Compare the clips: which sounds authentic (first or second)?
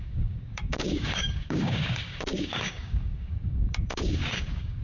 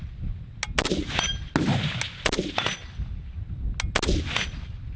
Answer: second